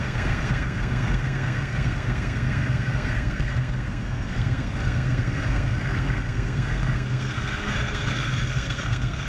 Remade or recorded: remade